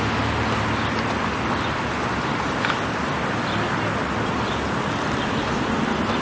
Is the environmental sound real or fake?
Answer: real